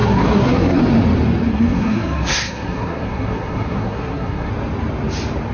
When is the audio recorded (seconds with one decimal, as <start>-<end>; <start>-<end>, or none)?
0.8-1.5; 4.5-5.5